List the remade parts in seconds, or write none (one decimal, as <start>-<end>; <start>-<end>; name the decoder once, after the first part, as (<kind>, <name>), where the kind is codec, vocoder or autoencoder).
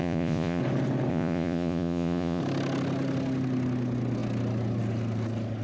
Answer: 0.0-0.6 (vocoder, Vocos); 1.1-2.4